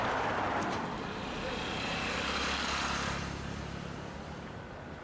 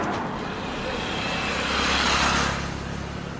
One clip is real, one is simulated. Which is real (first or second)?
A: second